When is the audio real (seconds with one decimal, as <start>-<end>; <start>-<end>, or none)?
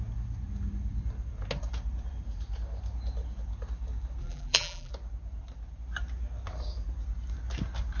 0.0-4.2; 4.9-8.0